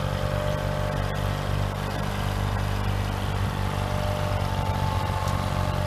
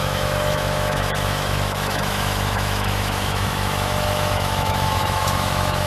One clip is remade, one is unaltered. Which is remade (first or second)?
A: second